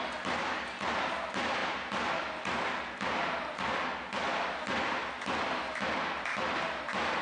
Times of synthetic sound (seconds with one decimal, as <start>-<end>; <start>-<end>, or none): 1.6-2.1